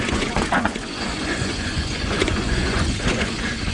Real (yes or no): no